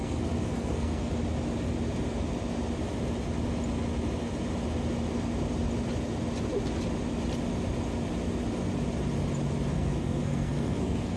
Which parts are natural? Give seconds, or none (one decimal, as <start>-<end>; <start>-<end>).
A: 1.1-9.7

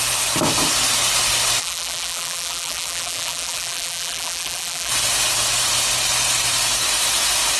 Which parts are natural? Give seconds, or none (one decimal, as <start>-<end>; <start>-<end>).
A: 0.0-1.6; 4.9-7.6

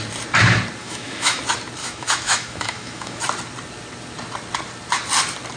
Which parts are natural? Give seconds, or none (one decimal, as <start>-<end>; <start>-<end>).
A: 0.0-0.8; 1.4-1.8; 3.2-5.6

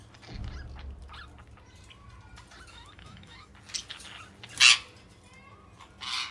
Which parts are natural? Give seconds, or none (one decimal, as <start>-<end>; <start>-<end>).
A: 0.0-2.7; 3.5-6.3

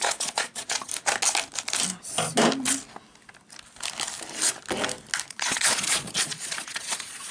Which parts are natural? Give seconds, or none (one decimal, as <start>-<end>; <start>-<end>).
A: 0.9-5.3

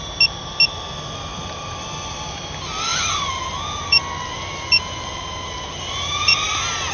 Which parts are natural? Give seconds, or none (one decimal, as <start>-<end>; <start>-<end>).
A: 0.0-1.3; 1.8-2.9; 5.1-6.2

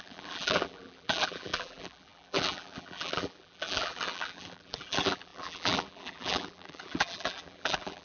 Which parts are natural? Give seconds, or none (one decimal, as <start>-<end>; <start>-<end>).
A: none